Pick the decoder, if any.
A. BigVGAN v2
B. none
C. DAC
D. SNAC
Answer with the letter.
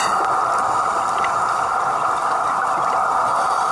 B